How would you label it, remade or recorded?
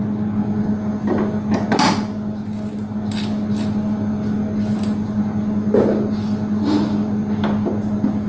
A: recorded